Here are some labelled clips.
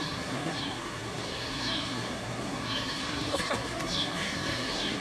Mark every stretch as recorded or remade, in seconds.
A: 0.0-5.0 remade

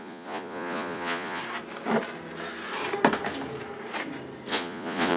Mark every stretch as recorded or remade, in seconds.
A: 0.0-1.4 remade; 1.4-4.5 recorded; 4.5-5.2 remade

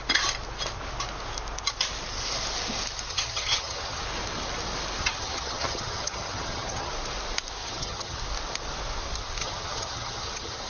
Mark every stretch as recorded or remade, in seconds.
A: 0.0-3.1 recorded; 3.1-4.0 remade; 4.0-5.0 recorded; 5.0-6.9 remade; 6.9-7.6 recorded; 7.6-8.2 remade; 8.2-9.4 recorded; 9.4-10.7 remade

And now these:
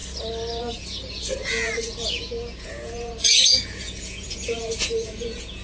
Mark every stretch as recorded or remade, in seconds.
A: 0.0-0.6 recorded; 0.6-5.6 remade

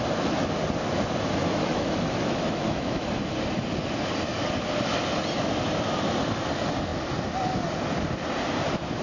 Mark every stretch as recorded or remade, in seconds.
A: 0.0-1.4 recorded; 1.4-3.1 remade; 3.1-9.0 recorded

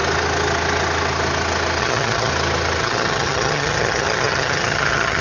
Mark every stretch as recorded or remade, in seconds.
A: 0.0-1.8 recorded; 1.8-2.3 remade; 2.3-2.8 recorded; 2.8-5.2 remade